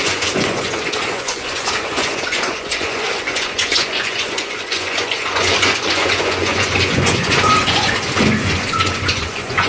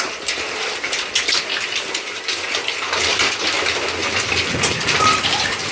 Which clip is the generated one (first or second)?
first